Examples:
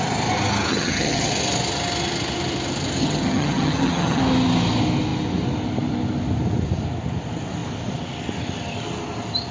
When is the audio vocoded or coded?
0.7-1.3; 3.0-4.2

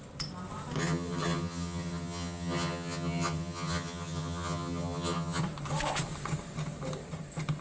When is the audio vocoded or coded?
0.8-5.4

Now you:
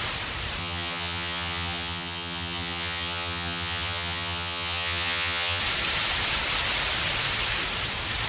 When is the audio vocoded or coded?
0.6-5.6

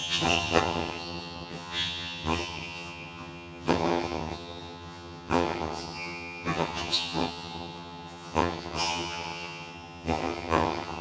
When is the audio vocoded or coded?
0.0-11.0